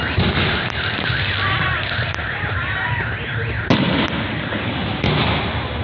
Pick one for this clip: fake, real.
real